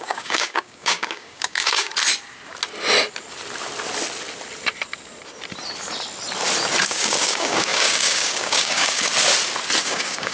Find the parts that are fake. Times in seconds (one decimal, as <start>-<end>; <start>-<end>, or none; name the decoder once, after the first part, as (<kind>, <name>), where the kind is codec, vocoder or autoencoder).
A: 0.0-1.9 (codec, DAC); 6.8-9.1; 9.8-10.3